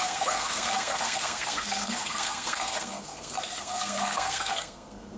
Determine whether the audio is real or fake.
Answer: fake